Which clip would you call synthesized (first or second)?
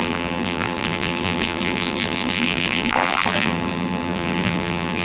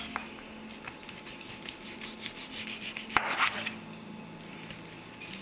first